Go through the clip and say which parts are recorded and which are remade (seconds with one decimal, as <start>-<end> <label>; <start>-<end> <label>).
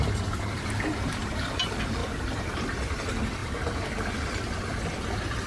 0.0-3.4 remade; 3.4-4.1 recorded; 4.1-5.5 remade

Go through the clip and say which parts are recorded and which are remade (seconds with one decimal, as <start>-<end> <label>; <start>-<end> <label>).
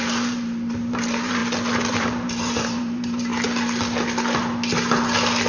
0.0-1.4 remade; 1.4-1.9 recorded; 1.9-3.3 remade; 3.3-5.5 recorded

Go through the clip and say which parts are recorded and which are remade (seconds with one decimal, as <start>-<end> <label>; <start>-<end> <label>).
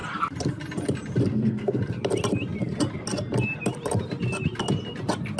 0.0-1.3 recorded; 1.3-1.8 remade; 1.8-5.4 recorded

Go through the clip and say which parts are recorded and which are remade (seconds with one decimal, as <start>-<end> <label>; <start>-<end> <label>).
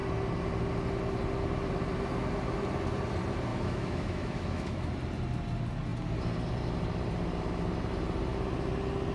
0.0-3.5 recorded; 3.5-4.9 remade; 4.9-9.1 recorded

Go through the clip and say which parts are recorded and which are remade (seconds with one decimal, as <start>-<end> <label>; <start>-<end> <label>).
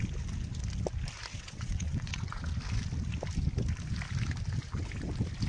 0.0-1.3 recorded; 1.3-2.5 remade; 2.5-5.5 recorded